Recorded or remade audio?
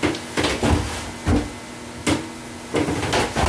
recorded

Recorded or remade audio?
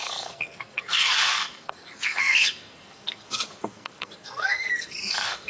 remade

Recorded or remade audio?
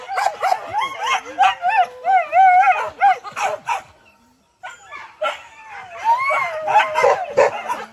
recorded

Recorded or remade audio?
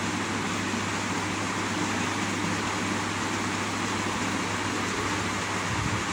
recorded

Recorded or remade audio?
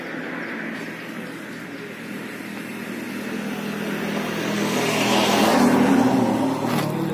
recorded